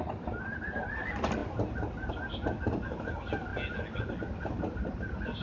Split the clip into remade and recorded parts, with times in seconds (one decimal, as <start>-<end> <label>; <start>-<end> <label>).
0.0-5.4 recorded